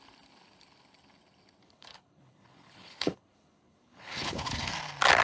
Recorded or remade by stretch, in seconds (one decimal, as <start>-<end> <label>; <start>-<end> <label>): 0.0-1.6 recorded; 1.6-4.7 remade; 4.7-5.2 recorded